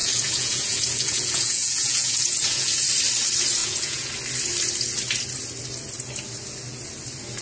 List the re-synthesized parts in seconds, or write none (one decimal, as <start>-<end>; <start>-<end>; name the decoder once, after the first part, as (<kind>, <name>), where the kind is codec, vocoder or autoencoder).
0.0-2.9 (vocoder, Vocos); 3.6-4.1

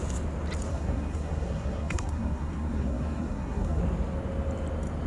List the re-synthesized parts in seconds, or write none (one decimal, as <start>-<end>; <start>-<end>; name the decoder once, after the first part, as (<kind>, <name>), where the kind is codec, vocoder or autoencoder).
0.7-3.8 (codec, SNAC)

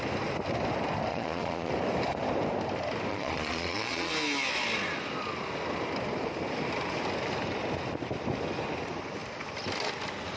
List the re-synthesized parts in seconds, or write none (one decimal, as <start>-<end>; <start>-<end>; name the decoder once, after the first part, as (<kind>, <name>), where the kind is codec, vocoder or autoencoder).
1.1-1.7 (vocoder, Vocos); 3.1-4.1